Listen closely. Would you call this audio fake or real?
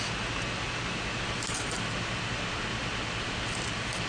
real